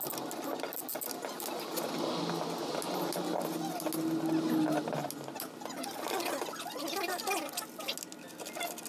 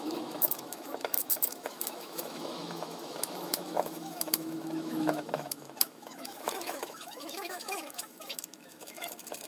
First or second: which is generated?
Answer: second